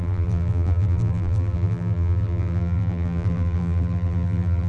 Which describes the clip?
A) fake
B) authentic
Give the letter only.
A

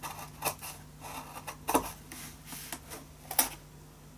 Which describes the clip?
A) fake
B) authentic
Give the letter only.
B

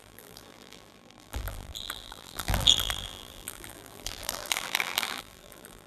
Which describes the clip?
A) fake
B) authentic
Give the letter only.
A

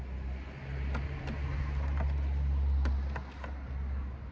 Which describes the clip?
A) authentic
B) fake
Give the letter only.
A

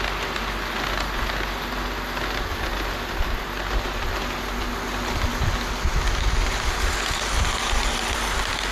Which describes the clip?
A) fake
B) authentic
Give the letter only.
B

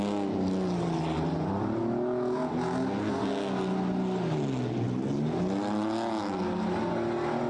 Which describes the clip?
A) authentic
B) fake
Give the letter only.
A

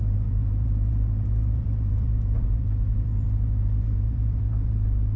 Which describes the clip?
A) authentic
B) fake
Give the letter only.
B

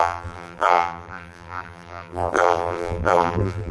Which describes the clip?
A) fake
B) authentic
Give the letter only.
A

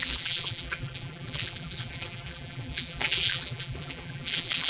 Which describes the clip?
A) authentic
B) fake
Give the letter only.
B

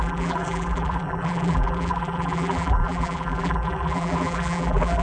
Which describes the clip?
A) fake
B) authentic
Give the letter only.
A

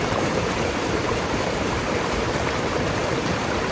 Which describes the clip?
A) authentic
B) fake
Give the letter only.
B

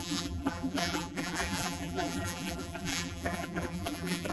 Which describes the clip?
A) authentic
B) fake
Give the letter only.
B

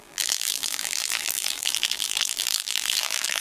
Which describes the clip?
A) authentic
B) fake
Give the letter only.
B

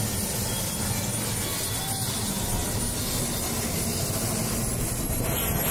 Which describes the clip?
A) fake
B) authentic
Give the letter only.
B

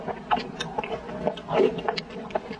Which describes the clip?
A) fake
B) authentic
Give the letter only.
B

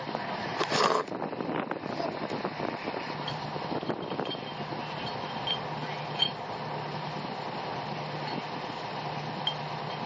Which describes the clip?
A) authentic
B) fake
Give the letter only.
A